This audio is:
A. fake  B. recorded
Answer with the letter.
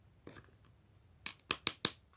B